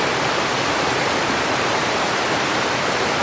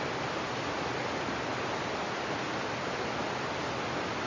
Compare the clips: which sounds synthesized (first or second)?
first